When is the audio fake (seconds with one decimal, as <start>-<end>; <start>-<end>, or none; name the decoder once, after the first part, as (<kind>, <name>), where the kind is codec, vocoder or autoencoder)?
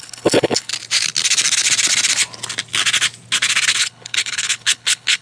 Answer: 0.0-0.7 (codec, HILCodec); 3.8-5.2